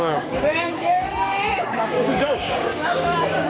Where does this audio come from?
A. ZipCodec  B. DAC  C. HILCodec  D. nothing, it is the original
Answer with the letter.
B